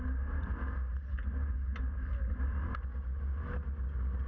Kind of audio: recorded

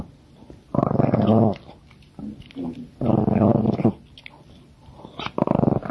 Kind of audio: recorded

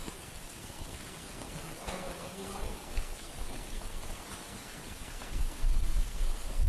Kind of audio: remade